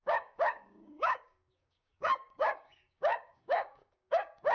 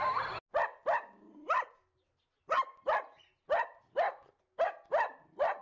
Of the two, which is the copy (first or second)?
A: first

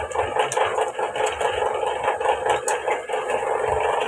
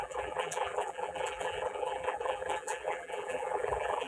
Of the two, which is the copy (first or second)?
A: second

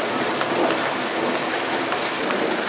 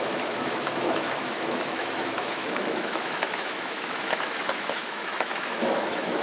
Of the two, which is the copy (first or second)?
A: second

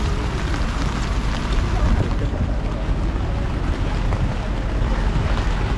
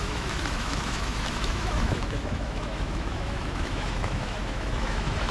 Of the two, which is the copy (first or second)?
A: second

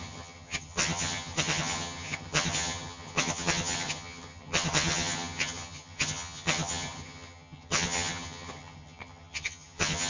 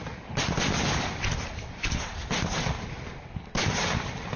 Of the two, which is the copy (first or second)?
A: first